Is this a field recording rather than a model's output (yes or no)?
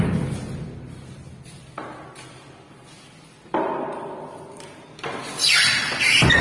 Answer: yes